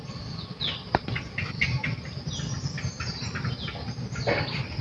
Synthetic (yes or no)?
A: no